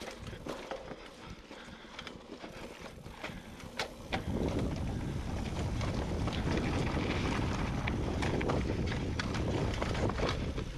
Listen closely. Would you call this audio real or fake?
fake